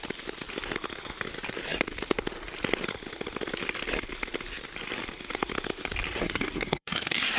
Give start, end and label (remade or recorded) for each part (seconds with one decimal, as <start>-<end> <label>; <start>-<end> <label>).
0.0-6.2 recorded; 6.2-7.4 remade